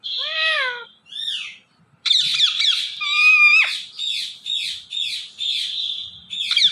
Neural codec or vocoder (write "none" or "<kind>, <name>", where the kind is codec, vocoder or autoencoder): none